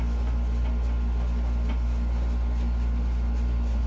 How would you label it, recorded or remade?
recorded